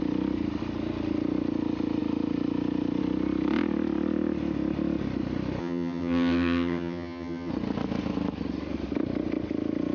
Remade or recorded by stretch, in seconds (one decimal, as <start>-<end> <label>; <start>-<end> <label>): 0.0-5.6 recorded; 5.6-7.5 remade; 7.5-9.9 recorded